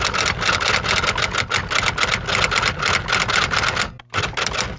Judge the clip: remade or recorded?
recorded